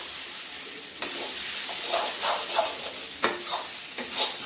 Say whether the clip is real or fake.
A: real